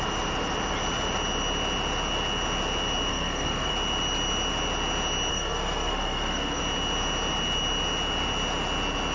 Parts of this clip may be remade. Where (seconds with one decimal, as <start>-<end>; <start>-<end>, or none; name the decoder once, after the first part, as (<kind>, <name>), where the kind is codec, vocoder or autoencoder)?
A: 3.1-3.7 (codec, SNAC); 5.3-6.6